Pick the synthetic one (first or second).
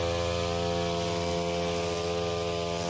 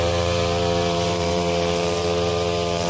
second